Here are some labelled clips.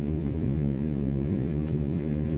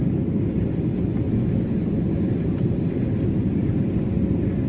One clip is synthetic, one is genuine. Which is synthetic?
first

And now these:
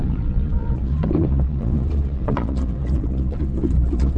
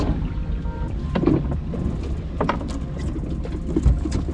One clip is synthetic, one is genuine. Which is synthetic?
first